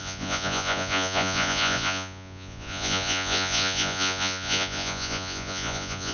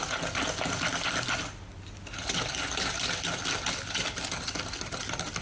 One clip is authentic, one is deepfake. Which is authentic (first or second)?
second